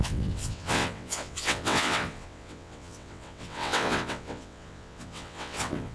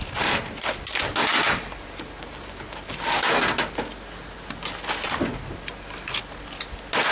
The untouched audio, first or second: second